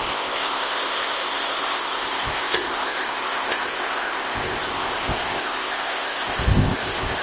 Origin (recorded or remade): remade